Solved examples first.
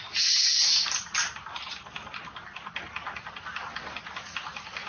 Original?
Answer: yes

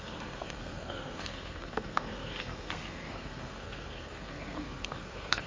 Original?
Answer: no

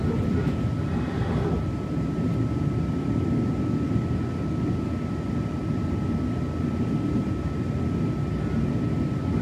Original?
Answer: yes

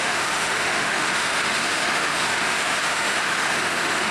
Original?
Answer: no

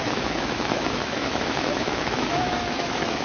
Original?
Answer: no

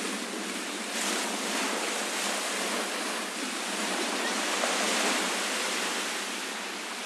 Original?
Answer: yes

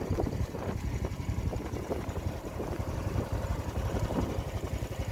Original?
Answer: no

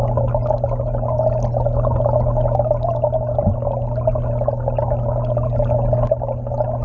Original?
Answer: yes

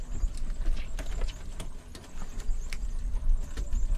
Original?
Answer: yes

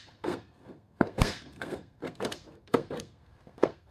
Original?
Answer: no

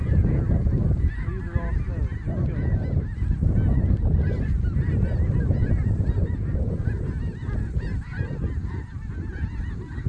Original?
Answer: yes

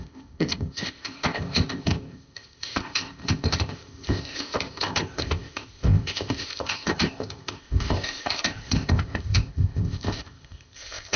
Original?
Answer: no